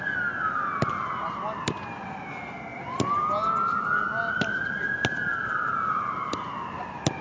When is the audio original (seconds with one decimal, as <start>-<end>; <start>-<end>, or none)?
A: 0.0-7.2